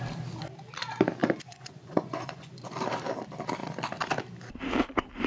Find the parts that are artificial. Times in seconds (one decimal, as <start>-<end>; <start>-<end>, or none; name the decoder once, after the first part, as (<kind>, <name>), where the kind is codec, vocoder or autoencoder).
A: 1.2-2.8 (vocoder, Vocos)